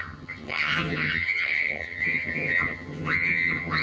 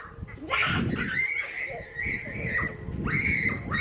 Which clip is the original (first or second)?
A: second